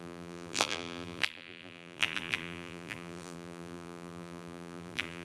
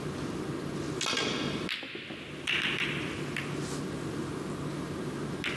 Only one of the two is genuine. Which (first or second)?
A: second